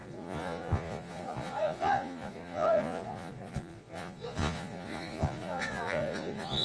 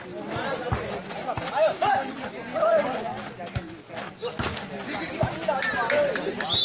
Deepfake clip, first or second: first